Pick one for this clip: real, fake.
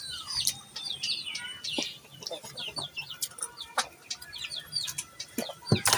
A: real